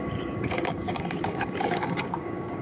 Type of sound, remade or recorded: remade